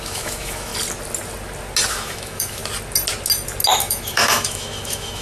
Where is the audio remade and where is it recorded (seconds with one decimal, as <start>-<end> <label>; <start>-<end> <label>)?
0.0-0.7 remade; 0.7-1.9 recorded; 1.9-2.6 remade; 2.6-3.7 recorded; 3.7-5.2 remade